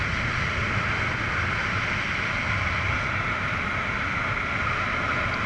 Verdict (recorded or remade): recorded